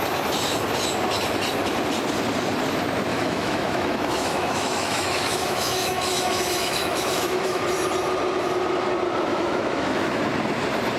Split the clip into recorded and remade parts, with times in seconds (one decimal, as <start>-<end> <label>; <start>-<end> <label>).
0.0-3.1 recorded; 3.1-7.6 remade; 7.6-9.3 recorded; 9.3-10.2 remade; 10.2-11.0 recorded